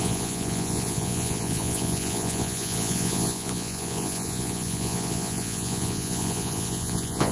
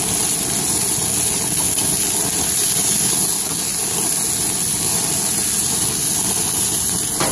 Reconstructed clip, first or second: first